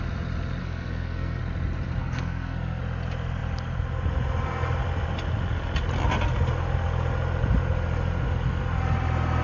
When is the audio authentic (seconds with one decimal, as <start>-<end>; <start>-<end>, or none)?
0.0-0.6; 1.4-2.0; 2.8-9.4

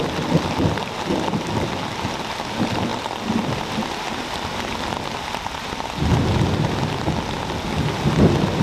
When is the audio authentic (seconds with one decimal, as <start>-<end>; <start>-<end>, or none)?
0.0-8.6

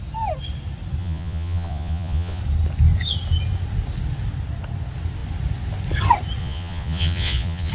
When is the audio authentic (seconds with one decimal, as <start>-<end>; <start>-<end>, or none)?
0.0-1.0; 2.4-6.4

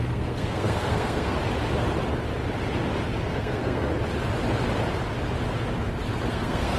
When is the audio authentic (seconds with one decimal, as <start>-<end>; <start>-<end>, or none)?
1.4-3.3; 3.9-6.3

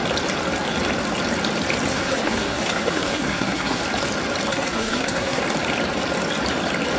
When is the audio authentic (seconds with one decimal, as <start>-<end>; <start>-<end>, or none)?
0.0-1.9; 3.8-4.5; 5.4-7.0

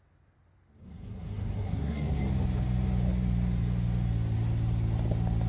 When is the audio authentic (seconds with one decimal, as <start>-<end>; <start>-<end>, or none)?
0.0-0.8; 2.2-5.5